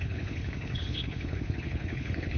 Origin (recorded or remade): remade